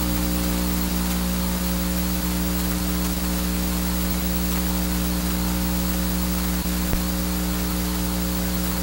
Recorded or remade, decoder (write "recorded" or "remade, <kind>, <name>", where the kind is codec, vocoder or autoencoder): recorded